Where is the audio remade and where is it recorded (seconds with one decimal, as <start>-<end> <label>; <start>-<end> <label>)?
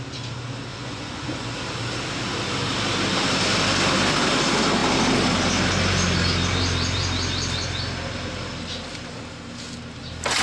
0.0-0.7 recorded; 0.7-1.5 remade; 1.5-10.4 recorded